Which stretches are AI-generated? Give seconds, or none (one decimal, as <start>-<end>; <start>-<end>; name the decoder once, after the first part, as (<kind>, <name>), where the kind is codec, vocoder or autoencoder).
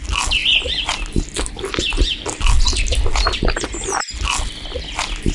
none